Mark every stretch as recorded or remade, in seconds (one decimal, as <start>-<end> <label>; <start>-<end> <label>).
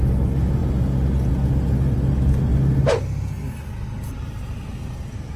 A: 0.0-5.4 recorded